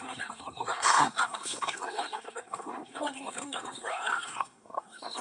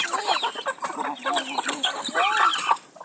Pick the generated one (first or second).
first